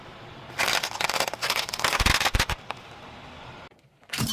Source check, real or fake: real